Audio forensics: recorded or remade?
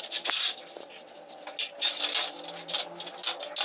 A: recorded